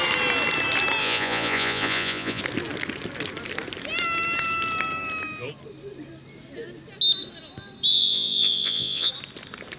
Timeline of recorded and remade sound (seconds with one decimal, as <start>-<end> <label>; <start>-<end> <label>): 0.0-1.0 recorded; 1.0-2.4 remade; 2.4-7.9 recorded; 7.9-9.1 remade; 9.1-9.8 recorded